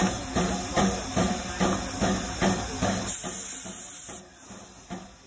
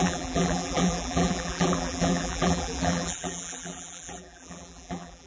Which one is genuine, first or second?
first